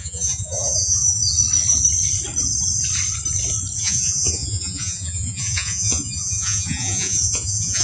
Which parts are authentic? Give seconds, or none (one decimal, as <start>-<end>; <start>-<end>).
1.2-3.8